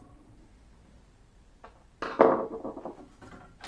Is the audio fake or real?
real